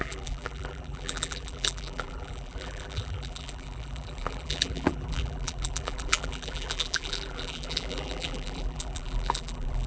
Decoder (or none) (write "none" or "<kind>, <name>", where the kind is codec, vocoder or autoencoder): vocoder, BigVGAN v2